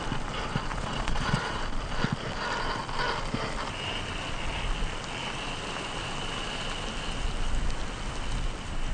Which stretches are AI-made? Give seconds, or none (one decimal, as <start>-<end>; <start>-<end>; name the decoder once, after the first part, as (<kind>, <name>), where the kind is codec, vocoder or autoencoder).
0.7-1.6 (vocoder, Vocos)